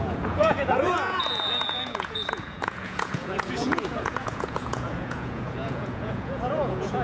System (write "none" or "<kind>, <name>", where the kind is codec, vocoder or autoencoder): vocoder, Vocos